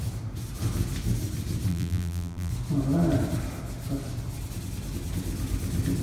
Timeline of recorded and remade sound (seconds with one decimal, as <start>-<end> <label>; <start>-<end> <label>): 0.0-1.7 recorded; 1.7-2.5 remade; 2.5-6.0 recorded